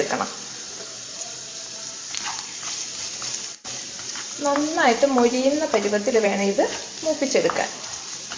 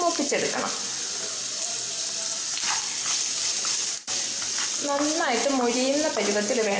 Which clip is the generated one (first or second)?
first